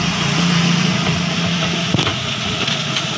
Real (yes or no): no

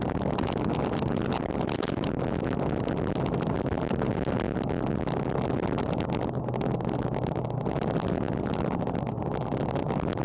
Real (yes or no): yes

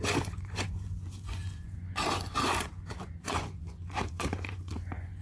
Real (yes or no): no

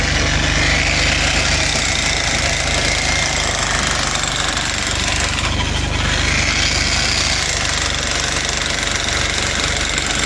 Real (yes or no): yes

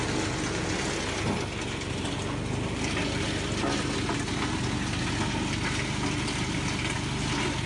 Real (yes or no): yes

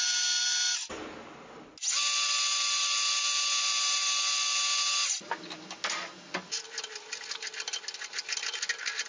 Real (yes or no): yes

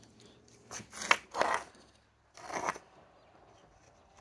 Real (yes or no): yes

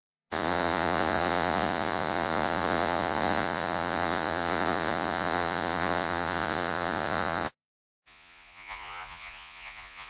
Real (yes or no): no